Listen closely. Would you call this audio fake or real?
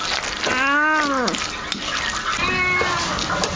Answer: real